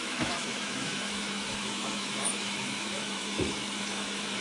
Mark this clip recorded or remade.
remade